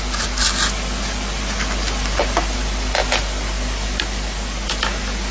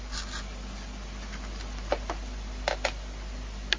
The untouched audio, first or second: first